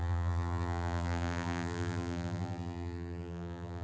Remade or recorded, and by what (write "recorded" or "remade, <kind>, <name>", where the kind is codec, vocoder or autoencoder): remade, vocoder, BigVGAN v2